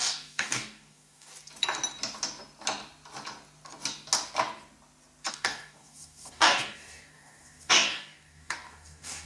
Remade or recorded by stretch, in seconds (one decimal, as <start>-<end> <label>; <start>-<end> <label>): 0.0-1.3 remade; 1.3-5.3 recorded; 5.3-9.3 remade